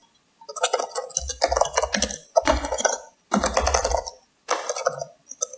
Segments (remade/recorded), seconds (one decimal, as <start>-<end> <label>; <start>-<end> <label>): 0.0-2.2 recorded; 2.2-3.2 remade; 3.2-5.6 recorded

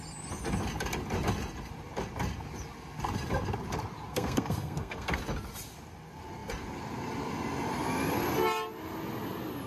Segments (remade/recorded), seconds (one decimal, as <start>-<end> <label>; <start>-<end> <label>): 0.0-4.1 recorded; 4.1-5.2 remade; 5.2-9.7 recorded

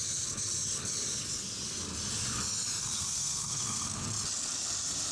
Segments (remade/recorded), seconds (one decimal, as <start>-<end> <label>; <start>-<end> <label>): 0.0-2.8 recorded; 2.8-4.0 remade; 4.0-5.1 recorded

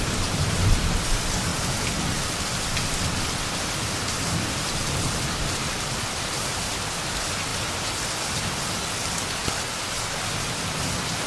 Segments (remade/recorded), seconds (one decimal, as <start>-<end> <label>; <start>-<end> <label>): 0.0-4.0 recorded; 4.0-6.9 remade; 6.9-11.3 recorded

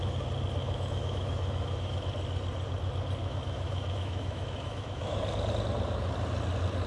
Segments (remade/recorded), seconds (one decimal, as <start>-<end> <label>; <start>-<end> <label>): 0.0-0.6 recorded; 0.6-2.1 remade; 2.1-3.2 recorded; 3.2-5.2 remade; 5.2-6.9 recorded

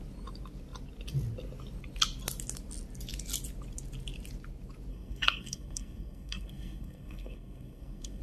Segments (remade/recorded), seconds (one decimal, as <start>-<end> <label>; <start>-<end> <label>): 0.0-4.9 recorded; 4.9-8.2 remade